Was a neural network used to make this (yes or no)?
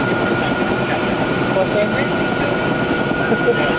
no